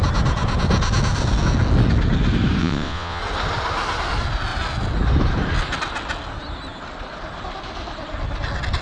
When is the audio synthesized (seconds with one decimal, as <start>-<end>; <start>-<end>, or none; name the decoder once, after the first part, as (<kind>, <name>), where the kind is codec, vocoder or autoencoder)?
2.6-3.2 (vocoder, WaveNeXt)